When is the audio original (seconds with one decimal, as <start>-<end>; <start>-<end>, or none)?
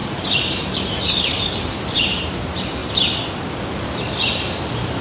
2.8-3.8